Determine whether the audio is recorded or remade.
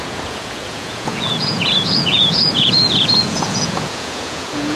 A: remade